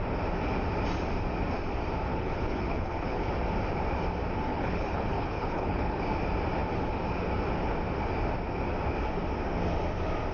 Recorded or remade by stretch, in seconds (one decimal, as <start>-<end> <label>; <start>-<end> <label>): 0.0-2.1 recorded; 2.1-3.3 remade; 3.3-4.5 recorded; 4.5-6.0 remade; 6.0-10.3 recorded